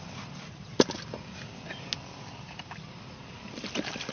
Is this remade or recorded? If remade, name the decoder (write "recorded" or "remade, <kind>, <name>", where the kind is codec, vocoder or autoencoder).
recorded